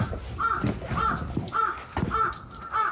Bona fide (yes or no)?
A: yes